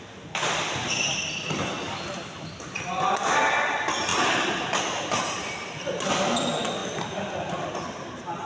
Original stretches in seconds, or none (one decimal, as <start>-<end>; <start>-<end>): 0.0-8.5